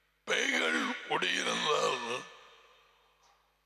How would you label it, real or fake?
real